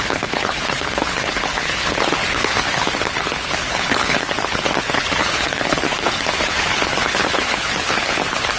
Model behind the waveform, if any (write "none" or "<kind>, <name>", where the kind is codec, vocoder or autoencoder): codec, HILCodec